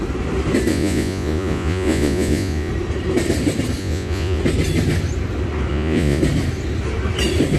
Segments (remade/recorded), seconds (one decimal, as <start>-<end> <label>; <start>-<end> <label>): 0.0-0.7 recorded; 0.7-2.7 remade; 2.7-3.8 recorded; 3.8-4.4 remade; 4.4-5.7 recorded; 5.7-6.2 remade; 6.2-7.6 recorded